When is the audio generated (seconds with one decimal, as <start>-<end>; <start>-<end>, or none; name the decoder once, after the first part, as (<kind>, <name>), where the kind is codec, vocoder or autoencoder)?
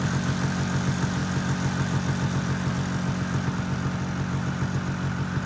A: none